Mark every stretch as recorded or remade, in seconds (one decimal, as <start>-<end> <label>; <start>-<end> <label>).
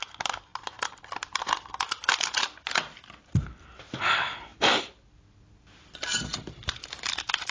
0.0-7.5 recorded